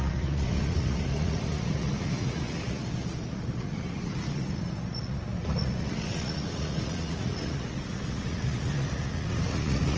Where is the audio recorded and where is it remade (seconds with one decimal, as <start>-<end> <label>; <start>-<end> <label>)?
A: 0.0-10.0 remade